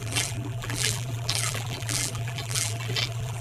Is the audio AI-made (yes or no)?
yes